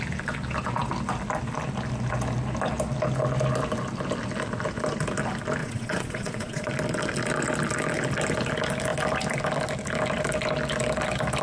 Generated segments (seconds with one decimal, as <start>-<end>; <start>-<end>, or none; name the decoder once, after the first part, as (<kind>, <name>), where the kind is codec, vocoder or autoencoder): 5.6-6.7 (vocoder, Vocos)